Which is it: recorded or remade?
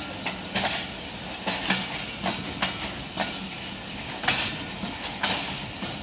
recorded